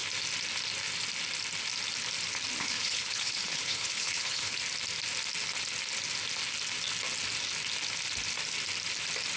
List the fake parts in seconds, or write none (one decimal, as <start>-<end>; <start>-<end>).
2.6-4.6